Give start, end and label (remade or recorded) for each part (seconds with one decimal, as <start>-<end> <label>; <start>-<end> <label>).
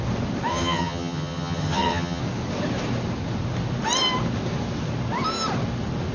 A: 0.0-0.5 recorded; 0.5-2.2 remade; 2.2-6.1 recorded